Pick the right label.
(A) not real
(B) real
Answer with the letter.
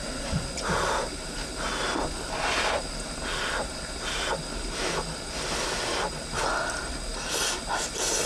B